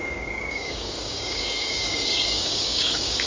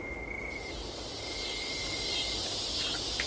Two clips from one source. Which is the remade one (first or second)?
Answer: first